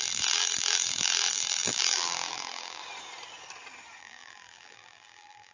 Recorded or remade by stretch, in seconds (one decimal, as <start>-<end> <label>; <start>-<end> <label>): 0.0-2.8 remade; 2.8-4.0 recorded; 4.0-5.5 remade

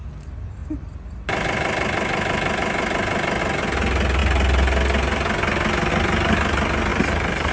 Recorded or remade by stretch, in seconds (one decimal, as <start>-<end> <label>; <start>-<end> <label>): 0.0-6.9 recorded; 6.9-7.5 remade